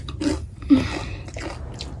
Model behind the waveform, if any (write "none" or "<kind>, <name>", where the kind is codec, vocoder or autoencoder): none